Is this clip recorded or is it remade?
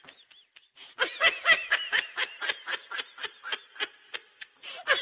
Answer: recorded